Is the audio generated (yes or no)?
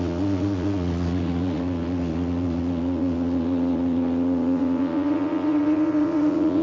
yes